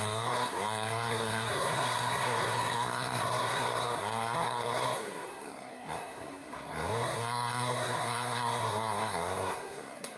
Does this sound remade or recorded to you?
remade